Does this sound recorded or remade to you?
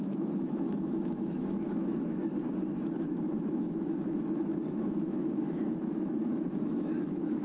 remade